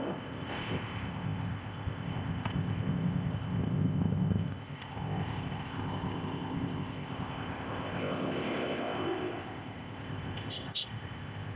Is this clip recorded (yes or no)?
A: no